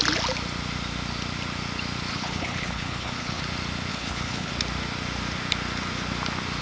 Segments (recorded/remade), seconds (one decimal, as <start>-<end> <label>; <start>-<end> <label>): 0.0-2.1 recorded; 2.1-3.4 remade; 3.4-3.9 recorded; 3.9-4.5 remade; 4.5-6.6 recorded